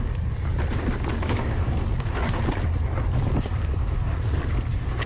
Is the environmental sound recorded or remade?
recorded